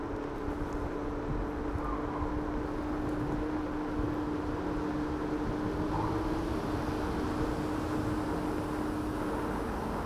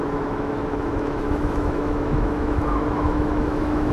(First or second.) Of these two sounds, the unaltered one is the first